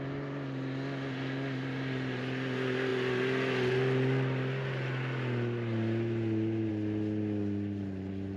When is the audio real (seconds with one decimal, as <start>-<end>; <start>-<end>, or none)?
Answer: 0.0-8.4